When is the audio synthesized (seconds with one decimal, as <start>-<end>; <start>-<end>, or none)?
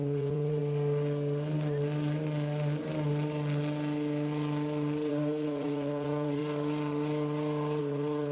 0.0-0.6; 5.1-6.4; 7.8-8.3